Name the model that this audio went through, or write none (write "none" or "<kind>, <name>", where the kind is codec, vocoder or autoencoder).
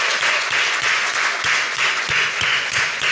vocoder, Vocos